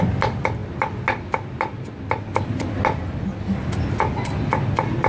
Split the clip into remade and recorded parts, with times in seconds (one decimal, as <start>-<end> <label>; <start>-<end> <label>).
0.0-5.1 recorded